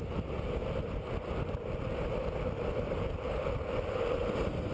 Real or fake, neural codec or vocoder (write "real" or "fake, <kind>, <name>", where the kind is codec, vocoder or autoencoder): real